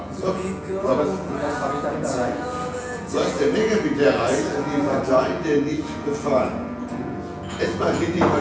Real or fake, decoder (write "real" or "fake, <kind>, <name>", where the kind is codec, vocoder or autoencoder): fake, vocoder, Vocos